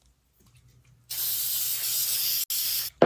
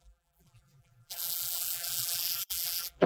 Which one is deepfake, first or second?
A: second